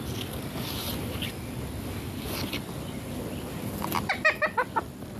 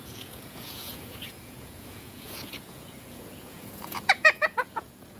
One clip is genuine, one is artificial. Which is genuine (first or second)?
first